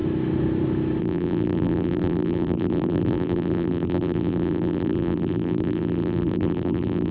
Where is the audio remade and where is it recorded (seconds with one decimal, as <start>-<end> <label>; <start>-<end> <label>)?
0.0-1.0 recorded; 1.0-7.1 remade